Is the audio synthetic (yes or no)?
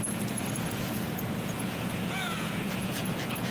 yes